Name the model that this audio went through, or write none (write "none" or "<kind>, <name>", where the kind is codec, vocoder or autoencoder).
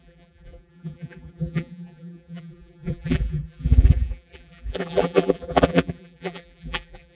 vocoder, BigVGAN v2